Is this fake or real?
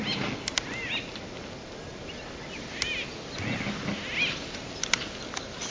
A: real